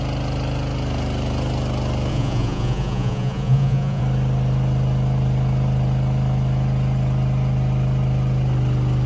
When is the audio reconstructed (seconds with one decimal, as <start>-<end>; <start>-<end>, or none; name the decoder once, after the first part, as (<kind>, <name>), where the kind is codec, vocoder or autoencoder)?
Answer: 2.1-4.0 (vocoder, Vocos)